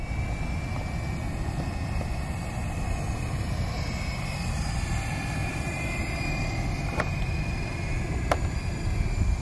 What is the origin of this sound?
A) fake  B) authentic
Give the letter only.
B